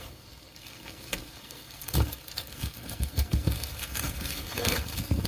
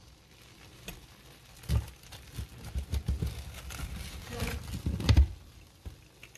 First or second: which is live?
second